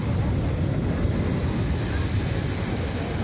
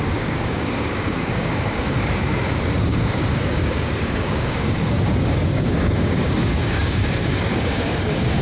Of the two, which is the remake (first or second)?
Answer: second